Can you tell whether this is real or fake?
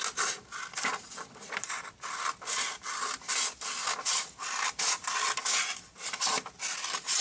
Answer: real